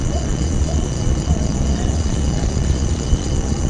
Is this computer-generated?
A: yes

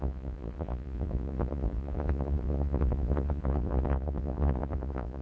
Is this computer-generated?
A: yes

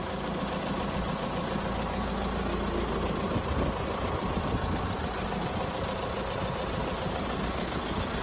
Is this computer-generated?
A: no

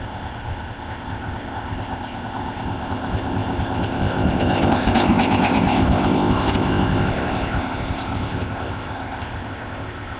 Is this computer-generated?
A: yes